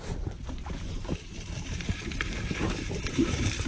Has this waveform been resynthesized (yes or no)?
yes